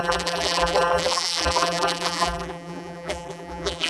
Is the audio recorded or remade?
remade